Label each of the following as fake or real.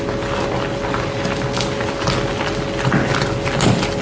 real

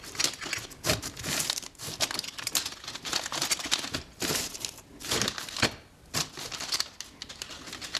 real